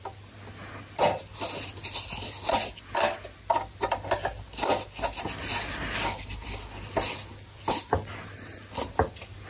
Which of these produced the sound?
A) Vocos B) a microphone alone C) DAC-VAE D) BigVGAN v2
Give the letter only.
B